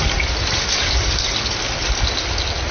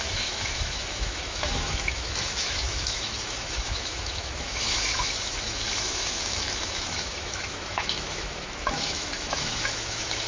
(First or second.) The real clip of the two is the first